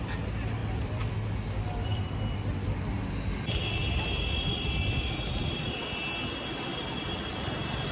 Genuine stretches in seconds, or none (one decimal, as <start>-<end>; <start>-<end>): 0.0-0.6; 1.1-7.9